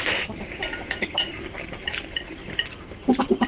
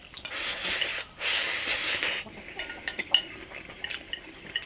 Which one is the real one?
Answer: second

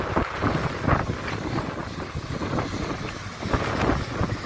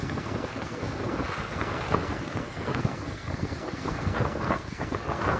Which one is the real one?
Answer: first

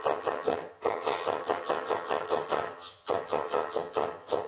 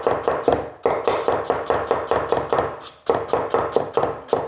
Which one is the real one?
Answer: second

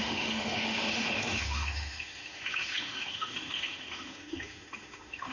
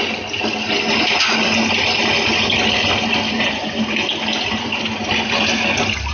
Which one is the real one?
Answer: second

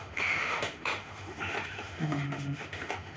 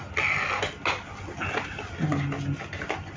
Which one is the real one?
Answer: second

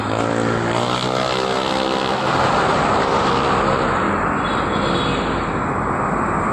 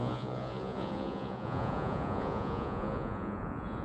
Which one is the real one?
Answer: first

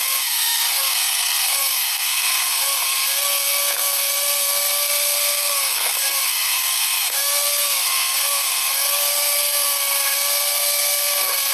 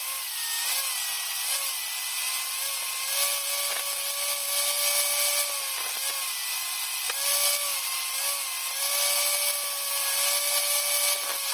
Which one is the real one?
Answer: second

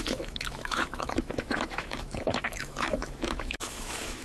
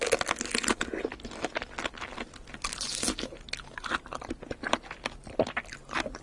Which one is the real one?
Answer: second